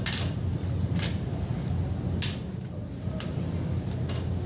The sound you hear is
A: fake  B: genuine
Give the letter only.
B